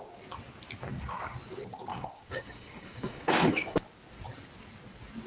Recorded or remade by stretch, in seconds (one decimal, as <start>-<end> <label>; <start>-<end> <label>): 0.0-1.9 recorded; 1.9-3.8 remade; 3.8-5.3 recorded